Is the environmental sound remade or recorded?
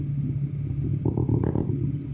recorded